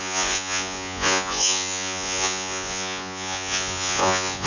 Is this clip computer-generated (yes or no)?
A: yes